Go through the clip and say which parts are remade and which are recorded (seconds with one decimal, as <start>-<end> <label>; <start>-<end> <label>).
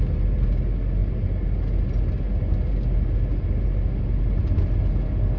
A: 0.0-5.4 recorded